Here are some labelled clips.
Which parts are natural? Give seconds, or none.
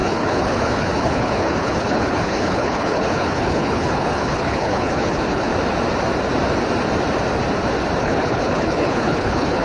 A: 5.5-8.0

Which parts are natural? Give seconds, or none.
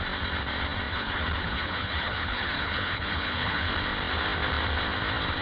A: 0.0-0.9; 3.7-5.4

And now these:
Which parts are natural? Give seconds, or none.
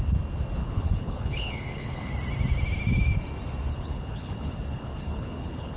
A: 0.0-0.6; 2.1-3.7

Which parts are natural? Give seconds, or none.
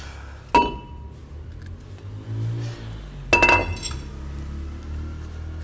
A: 0.0-5.6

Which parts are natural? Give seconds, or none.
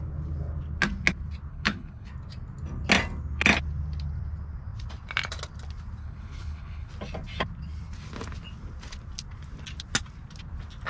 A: 0.0-1.5; 2.1-6.0; 6.9-10.9